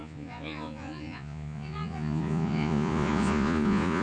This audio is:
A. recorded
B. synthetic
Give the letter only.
B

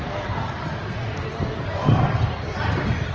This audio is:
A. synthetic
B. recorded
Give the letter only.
B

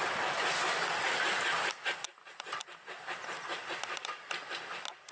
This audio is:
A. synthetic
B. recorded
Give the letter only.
B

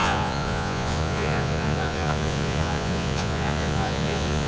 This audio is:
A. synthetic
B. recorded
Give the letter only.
A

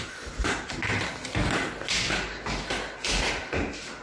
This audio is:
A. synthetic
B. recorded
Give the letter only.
B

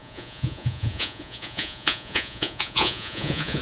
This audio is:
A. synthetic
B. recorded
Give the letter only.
A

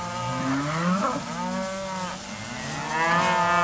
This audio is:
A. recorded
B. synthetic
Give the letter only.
A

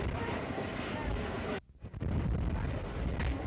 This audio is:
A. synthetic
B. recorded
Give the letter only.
B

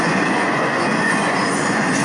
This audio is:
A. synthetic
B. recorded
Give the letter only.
A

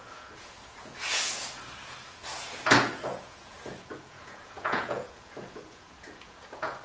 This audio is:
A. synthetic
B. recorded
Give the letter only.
A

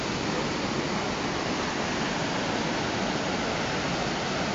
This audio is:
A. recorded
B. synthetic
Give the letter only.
A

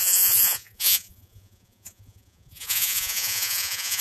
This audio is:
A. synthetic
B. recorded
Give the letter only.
A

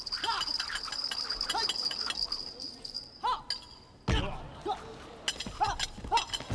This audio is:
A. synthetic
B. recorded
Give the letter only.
B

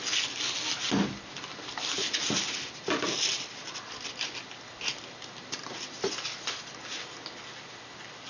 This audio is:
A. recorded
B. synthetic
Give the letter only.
A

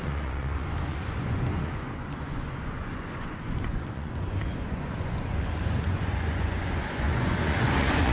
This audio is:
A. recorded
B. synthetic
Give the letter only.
B